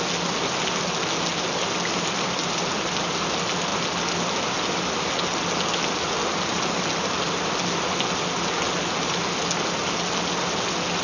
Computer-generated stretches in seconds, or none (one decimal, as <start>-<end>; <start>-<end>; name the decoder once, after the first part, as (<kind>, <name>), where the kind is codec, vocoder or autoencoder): none